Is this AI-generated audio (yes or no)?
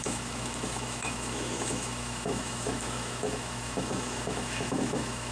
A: yes